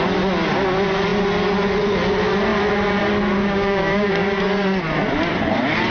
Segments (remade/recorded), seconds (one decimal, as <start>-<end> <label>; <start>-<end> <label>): 0.0-3.4 recorded; 3.4-4.4 remade; 4.4-5.9 recorded